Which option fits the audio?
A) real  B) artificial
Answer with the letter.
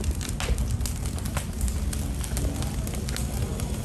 A